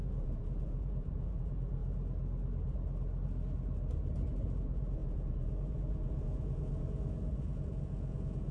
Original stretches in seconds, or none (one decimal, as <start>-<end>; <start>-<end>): 1.8-4.6